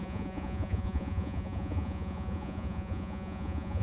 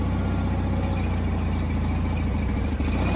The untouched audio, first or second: second